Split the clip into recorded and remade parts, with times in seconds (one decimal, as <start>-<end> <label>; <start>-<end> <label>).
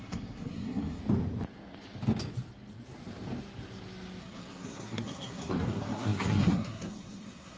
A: 0.0-1.0 remade; 1.0-4.2 recorded; 4.2-7.6 remade